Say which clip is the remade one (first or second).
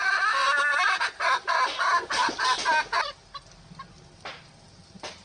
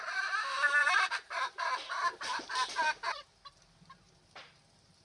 second